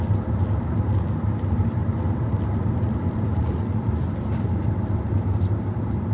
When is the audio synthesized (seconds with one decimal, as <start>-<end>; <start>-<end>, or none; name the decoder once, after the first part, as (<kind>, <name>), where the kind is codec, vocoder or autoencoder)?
none